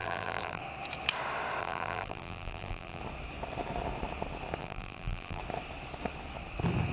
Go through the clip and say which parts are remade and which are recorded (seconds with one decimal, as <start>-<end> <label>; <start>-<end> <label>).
0.0-0.6 remade; 0.6-1.6 recorded; 1.6-3.0 remade; 3.0-4.6 recorded; 4.6-5.4 remade; 5.4-6.9 recorded